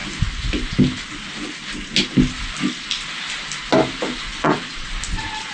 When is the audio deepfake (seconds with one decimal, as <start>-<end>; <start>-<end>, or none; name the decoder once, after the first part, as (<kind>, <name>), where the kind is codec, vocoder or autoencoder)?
4.3-4.9 (vocoder, Vocos)